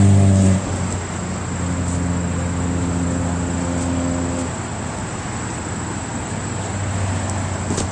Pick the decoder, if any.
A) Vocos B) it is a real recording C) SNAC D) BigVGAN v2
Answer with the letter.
B